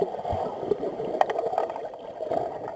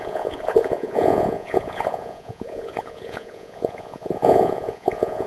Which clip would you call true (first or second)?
first